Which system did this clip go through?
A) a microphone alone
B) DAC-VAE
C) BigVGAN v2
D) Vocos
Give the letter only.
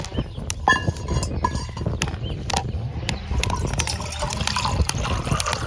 A